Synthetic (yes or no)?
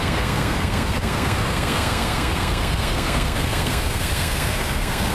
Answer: yes